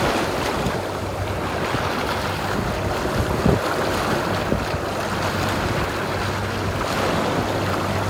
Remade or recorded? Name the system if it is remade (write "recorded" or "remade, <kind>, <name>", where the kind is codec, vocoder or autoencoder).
recorded